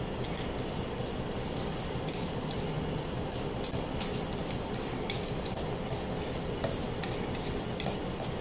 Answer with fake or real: real